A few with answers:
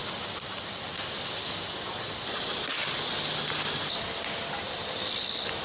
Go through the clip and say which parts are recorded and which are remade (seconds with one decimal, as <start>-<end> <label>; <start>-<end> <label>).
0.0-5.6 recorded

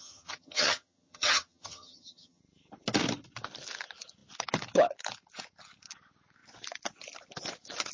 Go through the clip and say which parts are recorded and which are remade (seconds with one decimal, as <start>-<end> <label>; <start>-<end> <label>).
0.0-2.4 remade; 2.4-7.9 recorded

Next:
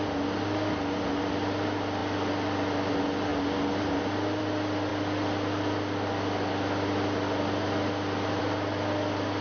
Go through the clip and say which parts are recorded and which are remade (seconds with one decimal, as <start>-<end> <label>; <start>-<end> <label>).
0.0-9.4 recorded

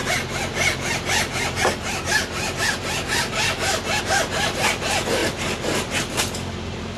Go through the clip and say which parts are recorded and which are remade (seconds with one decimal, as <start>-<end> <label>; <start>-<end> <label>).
0.0-7.0 recorded

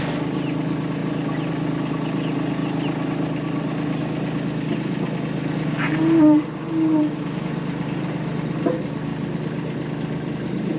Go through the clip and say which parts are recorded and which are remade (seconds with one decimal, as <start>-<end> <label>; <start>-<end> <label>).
0.0-10.8 recorded

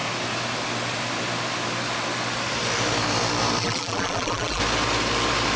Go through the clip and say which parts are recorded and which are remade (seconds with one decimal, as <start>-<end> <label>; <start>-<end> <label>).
0.0-3.6 recorded; 3.6-4.6 remade; 4.6-5.6 recorded

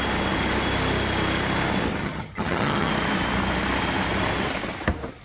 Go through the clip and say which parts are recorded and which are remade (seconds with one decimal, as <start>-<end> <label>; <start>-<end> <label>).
0.0-2.0 recorded; 2.0-2.9 remade; 2.9-5.2 recorded